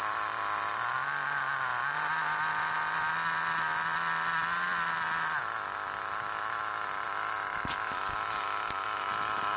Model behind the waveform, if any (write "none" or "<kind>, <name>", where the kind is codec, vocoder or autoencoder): none